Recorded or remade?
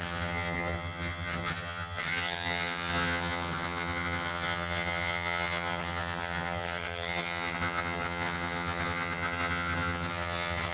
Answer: remade